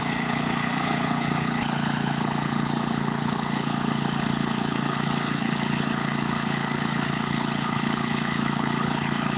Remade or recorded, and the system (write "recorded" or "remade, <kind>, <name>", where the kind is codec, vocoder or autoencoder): remade, codec, HILCodec